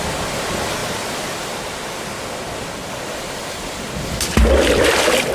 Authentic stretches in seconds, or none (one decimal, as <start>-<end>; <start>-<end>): 0.0-5.3

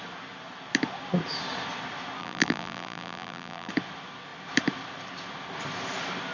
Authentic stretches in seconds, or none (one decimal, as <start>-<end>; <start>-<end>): 0.0-2.2; 3.7-6.3

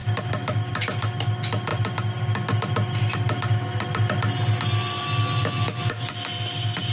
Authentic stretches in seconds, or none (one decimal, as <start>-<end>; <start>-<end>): 0.0-6.9

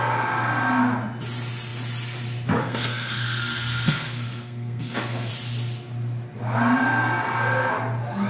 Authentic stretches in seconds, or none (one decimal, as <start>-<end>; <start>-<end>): 0.0-2.6; 5.3-8.3

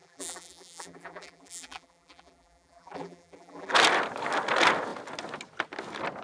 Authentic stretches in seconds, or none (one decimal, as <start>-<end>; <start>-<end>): 3.7-6.2

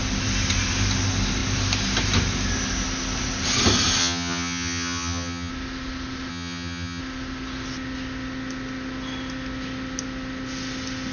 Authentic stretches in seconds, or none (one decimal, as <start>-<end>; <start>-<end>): 0.0-4.0; 5.5-6.3; 7.0-11.1

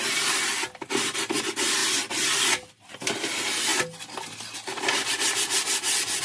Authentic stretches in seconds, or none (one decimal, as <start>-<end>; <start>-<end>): 0.0-6.2